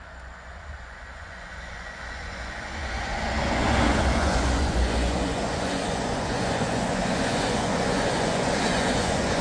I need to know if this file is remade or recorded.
remade